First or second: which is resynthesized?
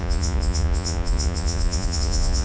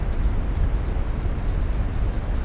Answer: first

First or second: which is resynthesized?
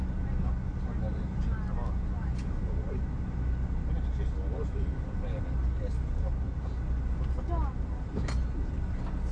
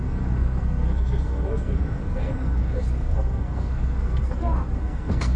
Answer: second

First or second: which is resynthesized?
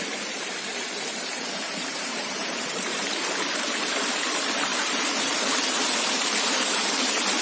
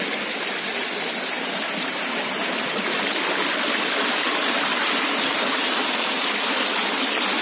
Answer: first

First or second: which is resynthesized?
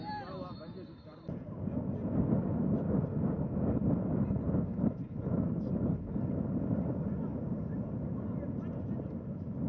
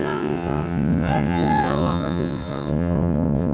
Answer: second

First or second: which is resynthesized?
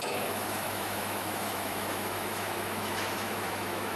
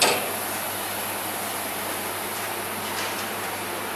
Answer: first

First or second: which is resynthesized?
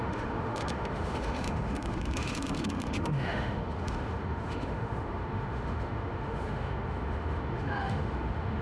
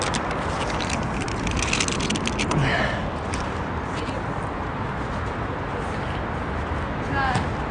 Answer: first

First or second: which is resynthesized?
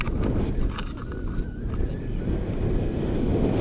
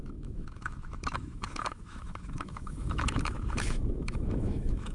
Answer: second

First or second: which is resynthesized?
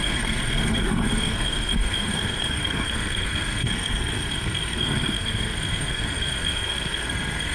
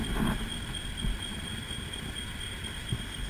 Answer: first